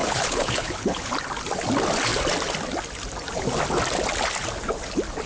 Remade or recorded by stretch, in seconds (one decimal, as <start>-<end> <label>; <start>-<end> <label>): 0.0-1.1 remade; 1.1-5.3 recorded

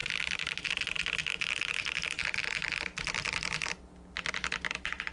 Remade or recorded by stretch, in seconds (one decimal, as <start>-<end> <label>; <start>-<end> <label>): 0.0-5.1 recorded

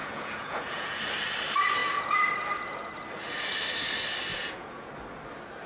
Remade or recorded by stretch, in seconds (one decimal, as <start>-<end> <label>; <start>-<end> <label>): 0.0-1.0 remade; 1.0-4.3 recorded; 4.3-4.9 remade; 4.9-5.7 recorded

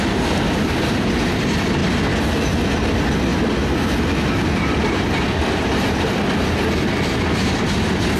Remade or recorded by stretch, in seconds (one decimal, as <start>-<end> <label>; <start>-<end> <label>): 0.0-1.8 remade; 1.8-2.7 recorded; 2.7-3.3 remade; 3.3-4.2 recorded; 4.2-8.2 remade

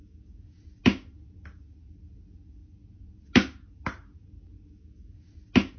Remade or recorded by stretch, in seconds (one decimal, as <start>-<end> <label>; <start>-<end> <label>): 0.0-5.8 recorded